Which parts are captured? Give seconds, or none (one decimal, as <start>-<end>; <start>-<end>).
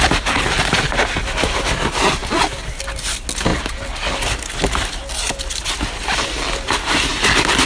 0.0-7.7